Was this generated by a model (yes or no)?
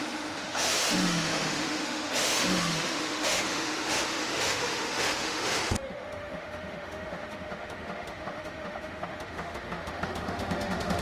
yes